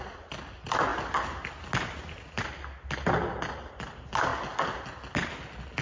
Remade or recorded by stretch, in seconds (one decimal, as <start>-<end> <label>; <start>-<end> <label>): 0.0-5.8 recorded